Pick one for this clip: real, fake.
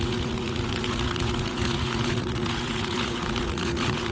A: fake